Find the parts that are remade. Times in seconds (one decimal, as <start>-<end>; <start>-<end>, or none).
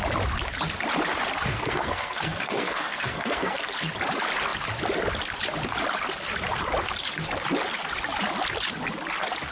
1.5-3.9